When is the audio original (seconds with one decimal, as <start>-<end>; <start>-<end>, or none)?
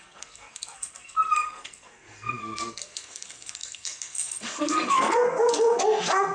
none